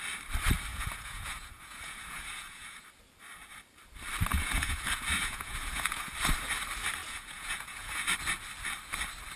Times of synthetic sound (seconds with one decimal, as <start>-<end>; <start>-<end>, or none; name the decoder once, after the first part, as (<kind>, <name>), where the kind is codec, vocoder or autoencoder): 0.7-2.8 (vocoder, Vocos); 4.3-6.1; 7.0-8.0